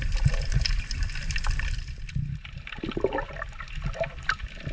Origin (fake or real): real